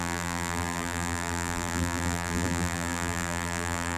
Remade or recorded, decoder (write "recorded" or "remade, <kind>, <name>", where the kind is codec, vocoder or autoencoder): remade, vocoder, BigVGAN v2